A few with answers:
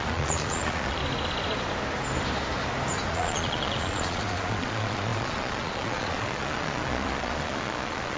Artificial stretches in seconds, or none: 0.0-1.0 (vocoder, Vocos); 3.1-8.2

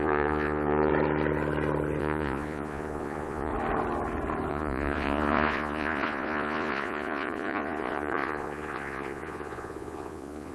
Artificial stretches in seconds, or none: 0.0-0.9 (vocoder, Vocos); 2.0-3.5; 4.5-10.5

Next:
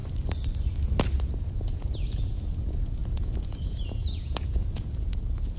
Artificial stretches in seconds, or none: 1.2-5.6 (vocoder, Vocos)